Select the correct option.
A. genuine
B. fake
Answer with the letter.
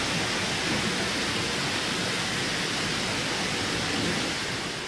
A